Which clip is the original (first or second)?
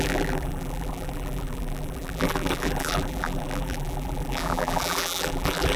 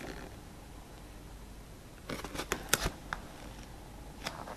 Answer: second